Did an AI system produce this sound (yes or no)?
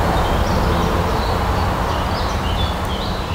no